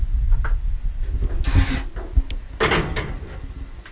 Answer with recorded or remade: recorded